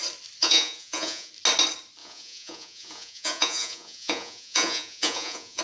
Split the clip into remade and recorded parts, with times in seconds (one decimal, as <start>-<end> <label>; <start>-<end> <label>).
0.0-0.4 recorded; 0.4-1.3 remade; 1.3-2.0 recorded; 2.0-5.6 remade